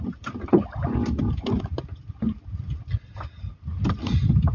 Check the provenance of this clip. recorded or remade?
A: recorded